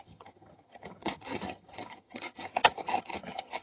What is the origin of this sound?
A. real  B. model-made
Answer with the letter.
B